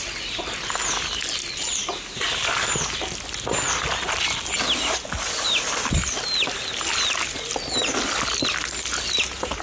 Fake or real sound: real